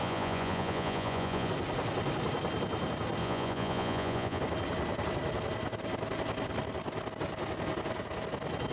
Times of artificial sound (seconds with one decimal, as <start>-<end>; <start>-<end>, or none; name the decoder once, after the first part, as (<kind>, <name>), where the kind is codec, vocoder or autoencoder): 0.0-1.5 (vocoder, Vocos); 3.2-4.4